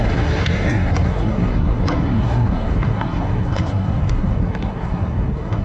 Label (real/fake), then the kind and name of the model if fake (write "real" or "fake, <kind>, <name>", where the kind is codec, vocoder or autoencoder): fake, codec, SNAC